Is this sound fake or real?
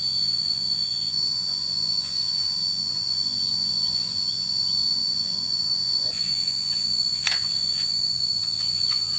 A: fake